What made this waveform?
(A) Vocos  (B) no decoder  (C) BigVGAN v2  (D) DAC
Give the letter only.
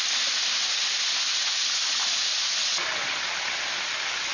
B